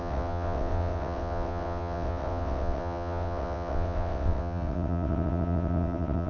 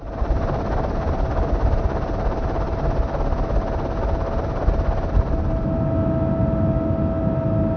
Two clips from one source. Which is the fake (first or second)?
first